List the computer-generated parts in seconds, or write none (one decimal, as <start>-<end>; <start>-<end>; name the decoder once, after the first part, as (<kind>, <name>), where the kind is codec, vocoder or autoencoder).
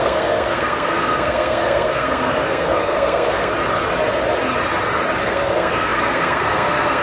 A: 0.0-3.5 (codec, SNAC); 5.2-7.0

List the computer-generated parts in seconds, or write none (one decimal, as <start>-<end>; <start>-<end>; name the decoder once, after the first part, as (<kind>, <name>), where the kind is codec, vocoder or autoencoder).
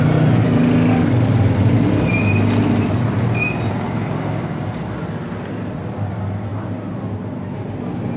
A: 6.5-7.0 (vocoder, BigVGAN v2)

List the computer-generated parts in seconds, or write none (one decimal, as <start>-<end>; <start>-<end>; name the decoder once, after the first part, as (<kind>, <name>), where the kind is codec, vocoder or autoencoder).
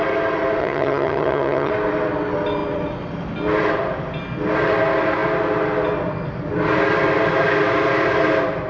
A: 0.6-1.7 (vocoder, HiFi-GAN)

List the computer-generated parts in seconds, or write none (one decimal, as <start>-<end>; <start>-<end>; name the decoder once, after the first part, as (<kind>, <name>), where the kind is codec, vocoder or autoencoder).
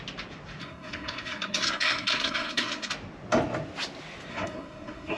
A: 0.6-2.9 (codec, SNAC); 4.3-5.2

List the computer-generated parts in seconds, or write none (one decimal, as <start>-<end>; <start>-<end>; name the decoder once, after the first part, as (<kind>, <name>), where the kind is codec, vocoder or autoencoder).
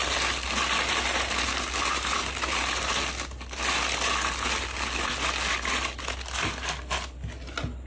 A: none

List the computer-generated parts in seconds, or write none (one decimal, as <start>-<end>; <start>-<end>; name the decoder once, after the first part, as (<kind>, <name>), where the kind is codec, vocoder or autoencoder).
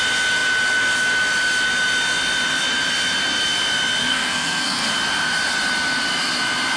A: 4.0-4.9 (codec, SNAC)